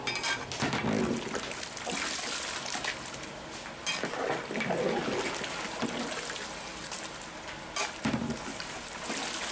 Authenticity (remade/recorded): recorded